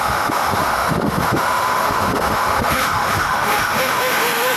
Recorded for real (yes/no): no